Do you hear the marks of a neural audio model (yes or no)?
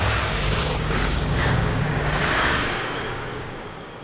yes